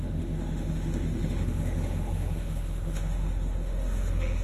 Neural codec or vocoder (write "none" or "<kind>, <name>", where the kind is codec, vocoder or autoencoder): autoencoder, DAC-VAE